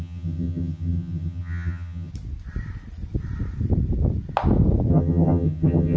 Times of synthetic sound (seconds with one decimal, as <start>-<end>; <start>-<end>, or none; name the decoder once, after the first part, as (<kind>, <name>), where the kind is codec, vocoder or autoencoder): 0.0-2.1 (vocoder, HiFi-GAN); 4.9-6.0